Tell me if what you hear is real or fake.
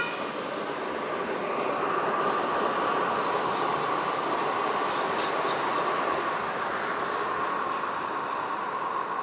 real